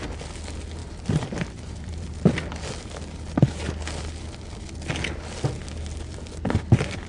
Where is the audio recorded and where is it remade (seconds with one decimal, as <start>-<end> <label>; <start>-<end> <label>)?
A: 0.0-0.8 recorded; 0.8-2.2 remade; 2.2-7.1 recorded